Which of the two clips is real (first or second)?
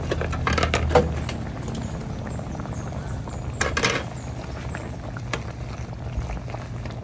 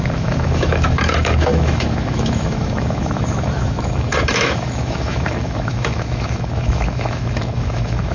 first